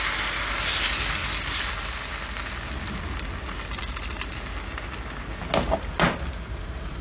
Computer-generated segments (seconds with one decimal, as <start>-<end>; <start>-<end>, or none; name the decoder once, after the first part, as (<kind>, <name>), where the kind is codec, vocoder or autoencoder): 6.4-7.0 (vocoder, Vocos)